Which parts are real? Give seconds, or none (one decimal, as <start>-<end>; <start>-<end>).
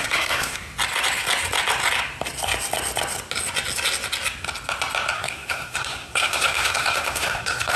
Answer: 0.7-5.1